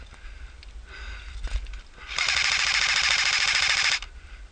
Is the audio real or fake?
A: real